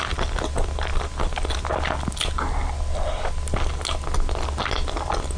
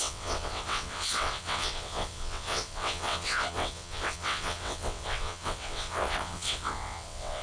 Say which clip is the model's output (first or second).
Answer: second